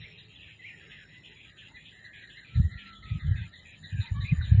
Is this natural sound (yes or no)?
no